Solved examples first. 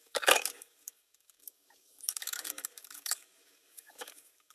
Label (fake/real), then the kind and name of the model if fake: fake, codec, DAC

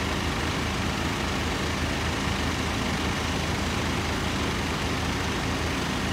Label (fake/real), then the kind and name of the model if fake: real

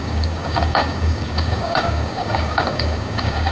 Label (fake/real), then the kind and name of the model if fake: fake, codec, DAC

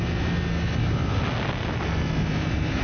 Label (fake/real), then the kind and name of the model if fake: real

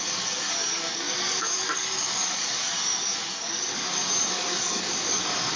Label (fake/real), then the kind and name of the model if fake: fake, codec, DAC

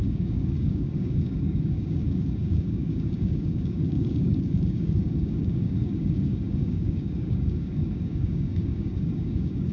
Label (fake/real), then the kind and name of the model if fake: fake, codec, DAC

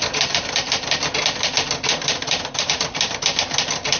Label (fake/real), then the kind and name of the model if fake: real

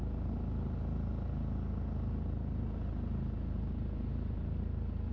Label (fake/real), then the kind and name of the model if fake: real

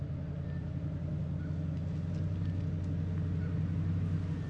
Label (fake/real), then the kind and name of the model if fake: real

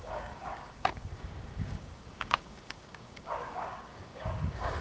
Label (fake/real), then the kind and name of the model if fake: fake, codec, DAC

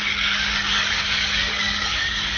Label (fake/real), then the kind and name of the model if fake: fake, codec, DAC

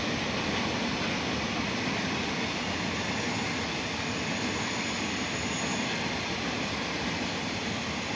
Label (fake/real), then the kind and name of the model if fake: real